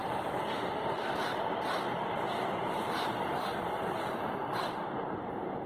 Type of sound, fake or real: fake